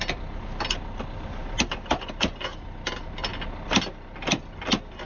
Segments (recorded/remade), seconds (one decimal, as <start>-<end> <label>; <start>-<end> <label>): 0.0-5.1 recorded